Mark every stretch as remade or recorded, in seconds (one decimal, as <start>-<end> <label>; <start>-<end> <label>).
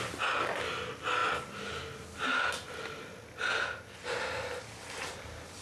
0.0-5.6 recorded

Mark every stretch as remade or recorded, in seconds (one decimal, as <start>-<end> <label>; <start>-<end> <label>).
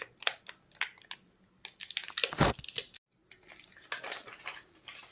0.0-5.1 recorded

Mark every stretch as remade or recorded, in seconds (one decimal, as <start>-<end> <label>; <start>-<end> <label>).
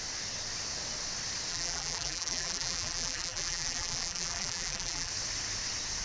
0.0-1.5 recorded; 1.5-5.1 remade; 5.1-6.0 recorded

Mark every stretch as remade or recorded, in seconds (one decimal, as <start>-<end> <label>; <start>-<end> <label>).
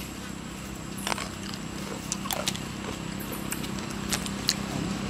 0.0-5.1 recorded